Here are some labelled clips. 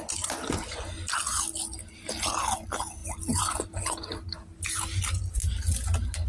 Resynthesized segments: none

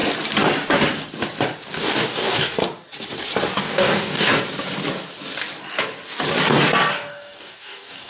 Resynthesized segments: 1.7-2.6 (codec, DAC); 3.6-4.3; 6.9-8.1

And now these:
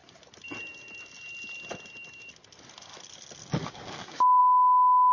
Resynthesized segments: 3.4-4.4 (codec, DAC)

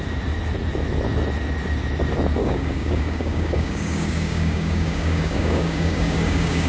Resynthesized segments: 2.4-6.7 (codec, DAC)

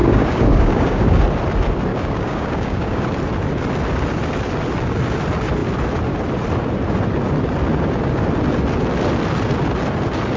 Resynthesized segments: 0.0-1.2 (codec, DAC); 1.9-3.0

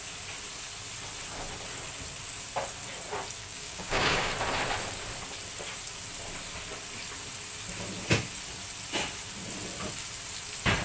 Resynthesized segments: 3.4-4.3 (codec, DAC)